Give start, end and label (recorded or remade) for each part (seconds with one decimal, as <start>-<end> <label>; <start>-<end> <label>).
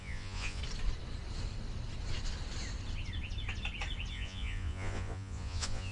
0.0-0.6 remade; 0.6-4.1 recorded; 4.1-5.9 remade